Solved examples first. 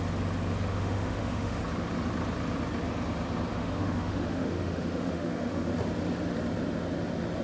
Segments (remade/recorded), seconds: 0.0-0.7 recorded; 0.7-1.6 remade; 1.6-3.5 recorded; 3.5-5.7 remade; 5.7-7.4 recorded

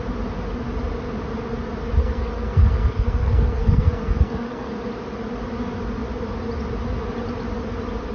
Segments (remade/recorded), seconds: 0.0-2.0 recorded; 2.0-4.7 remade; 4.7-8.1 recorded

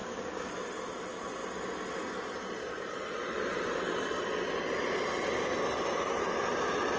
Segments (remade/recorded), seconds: 0.0-0.5 remade; 0.5-7.0 recorded

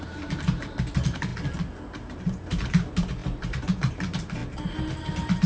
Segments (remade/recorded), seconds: 0.0-1.3 remade; 1.3-2.0 recorded; 2.0-4.4 remade; 4.4-4.9 recorded; 4.9-5.5 remade